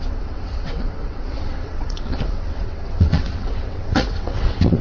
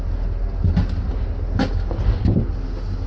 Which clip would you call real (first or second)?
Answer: second